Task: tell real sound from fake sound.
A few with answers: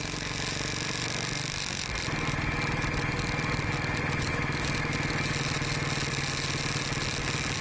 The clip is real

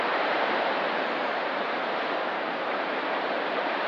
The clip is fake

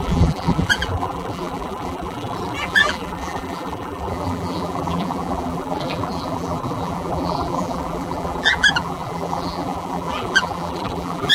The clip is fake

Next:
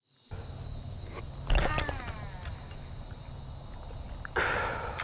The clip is real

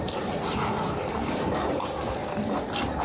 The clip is fake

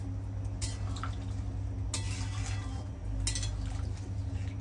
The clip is real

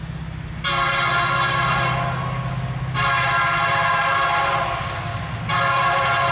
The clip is real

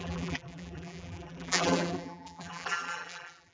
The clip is fake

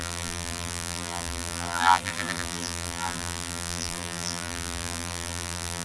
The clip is fake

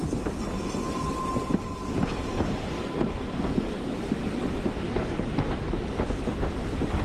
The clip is real